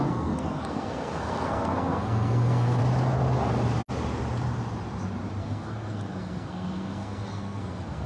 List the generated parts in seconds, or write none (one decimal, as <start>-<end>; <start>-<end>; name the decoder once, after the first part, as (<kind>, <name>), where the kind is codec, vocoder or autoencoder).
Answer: 0.0-2.8 (codec, SNAC); 5.4-8.1